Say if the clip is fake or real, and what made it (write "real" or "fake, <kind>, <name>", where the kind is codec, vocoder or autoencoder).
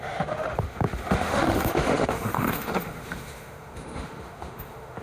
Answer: fake, autoencoder, DAC-VAE